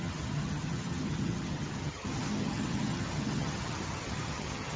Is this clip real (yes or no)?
no